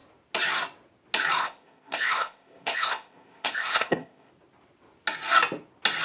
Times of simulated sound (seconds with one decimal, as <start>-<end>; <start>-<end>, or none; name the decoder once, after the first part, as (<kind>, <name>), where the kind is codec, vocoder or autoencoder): 1.4-4.3 (codec, ZipCodec)